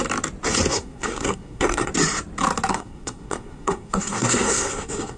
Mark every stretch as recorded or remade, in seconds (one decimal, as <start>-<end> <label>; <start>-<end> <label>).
0.0-0.7 recorded; 0.7-1.9 remade; 1.9-2.7 recorded; 2.7-5.2 remade